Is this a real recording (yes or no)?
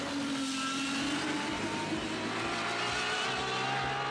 yes